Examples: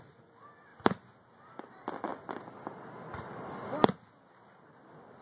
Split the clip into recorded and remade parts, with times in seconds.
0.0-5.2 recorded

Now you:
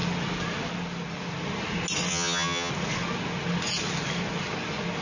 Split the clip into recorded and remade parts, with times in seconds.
0.0-2.1 recorded; 2.1-2.7 remade; 2.7-5.0 recorded

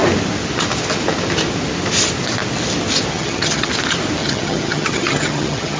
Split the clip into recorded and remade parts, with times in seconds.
0.0-3.1 recorded; 3.1-3.7 remade; 3.7-4.2 recorded; 4.2-5.8 remade

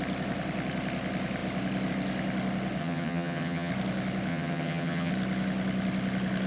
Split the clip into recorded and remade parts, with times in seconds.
0.0-2.8 recorded; 2.8-3.7 remade; 3.7-4.3 recorded; 4.3-5.1 remade; 5.1-6.5 recorded

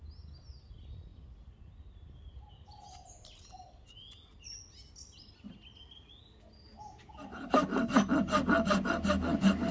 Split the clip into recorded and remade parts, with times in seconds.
0.0-9.7 recorded

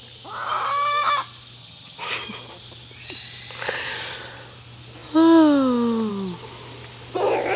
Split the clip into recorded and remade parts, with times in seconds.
0.0-1.6 recorded; 1.6-2.1 remade; 2.1-7.6 recorded